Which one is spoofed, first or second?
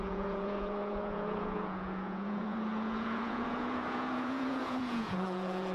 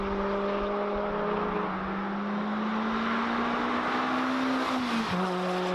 first